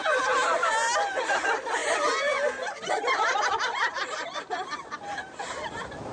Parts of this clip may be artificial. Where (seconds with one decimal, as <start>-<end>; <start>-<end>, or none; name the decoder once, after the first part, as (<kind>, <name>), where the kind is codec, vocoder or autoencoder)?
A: 1.8-5.5 (vocoder, BigVGAN v2)